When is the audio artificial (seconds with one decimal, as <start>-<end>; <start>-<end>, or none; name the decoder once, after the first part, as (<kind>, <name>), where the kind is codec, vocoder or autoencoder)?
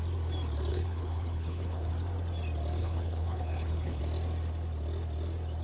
0.7-1.9 (codec, HILCodec); 2.8-4.0